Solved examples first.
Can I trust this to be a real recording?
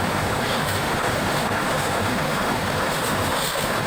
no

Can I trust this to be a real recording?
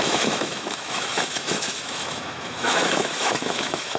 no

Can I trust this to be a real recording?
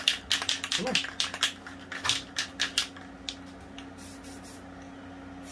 yes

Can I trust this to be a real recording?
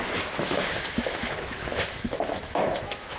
no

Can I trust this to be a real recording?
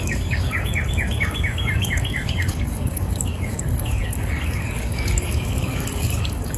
no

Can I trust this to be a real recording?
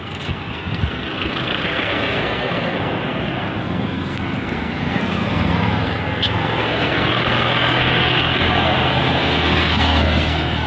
no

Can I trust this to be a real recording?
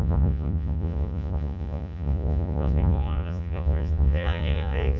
no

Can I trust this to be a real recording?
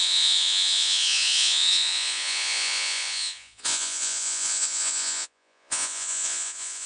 no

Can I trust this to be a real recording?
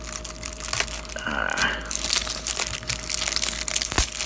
yes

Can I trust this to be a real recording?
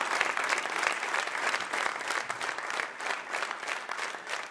no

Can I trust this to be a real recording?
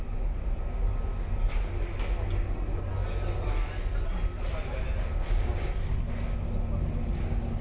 yes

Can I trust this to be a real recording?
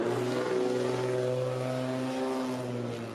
yes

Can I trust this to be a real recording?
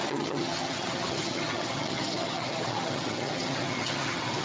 no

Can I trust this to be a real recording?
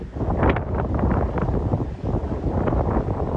yes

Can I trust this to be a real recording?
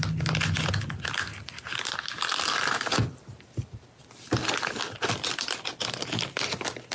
yes